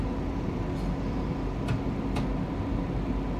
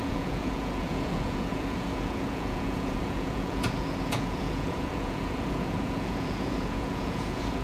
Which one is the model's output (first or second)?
second